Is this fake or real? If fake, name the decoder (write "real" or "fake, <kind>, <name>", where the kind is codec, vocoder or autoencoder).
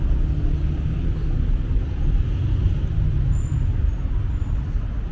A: real